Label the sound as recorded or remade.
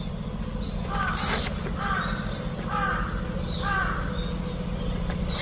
recorded